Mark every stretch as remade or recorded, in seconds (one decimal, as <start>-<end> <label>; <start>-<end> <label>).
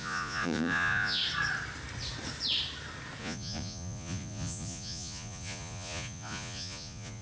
0.0-1.2 remade; 1.2-3.2 recorded; 3.2-7.2 remade